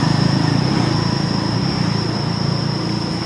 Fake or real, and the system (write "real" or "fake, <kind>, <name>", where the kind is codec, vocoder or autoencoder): real